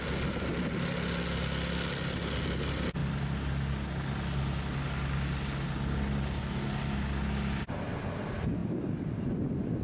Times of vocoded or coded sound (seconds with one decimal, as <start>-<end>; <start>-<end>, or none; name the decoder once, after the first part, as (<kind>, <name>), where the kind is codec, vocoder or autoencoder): none